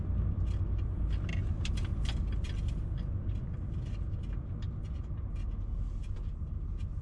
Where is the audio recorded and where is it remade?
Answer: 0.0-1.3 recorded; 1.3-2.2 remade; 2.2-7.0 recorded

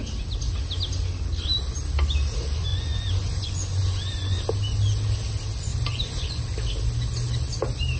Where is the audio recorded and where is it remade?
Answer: 0.0-2.7 recorded; 2.7-4.4 remade; 4.4-5.7 recorded; 5.7-6.4 remade; 6.4-8.0 recorded